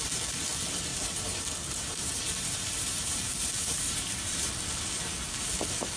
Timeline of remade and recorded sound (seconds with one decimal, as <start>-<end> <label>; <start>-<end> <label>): 0.0-0.9 recorded; 0.9-4.5 remade; 4.5-6.0 recorded